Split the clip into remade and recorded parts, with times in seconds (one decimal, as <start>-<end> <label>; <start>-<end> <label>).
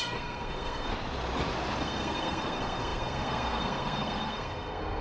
0.0-0.9 remade; 0.9-1.8 recorded; 1.8-5.0 remade